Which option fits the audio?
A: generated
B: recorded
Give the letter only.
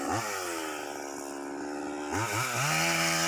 B